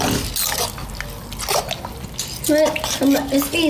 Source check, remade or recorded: recorded